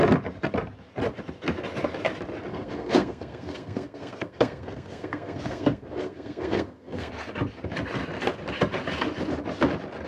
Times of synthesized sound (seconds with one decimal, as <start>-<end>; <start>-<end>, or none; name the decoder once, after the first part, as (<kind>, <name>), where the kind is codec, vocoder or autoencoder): 2.5-7.1 (codec, SNAC)